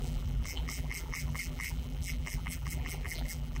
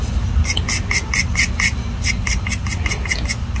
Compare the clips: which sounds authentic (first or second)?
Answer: second